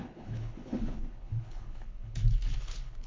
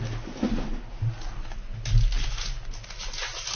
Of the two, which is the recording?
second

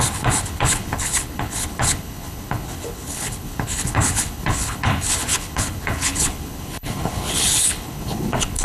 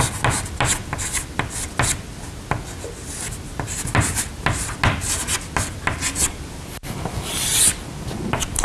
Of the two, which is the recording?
second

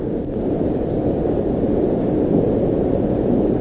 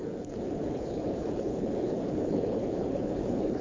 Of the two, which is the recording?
first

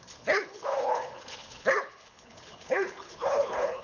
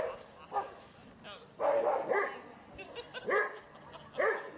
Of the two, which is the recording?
second